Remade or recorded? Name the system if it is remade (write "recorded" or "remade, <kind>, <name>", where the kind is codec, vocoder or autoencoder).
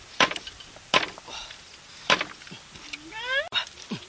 recorded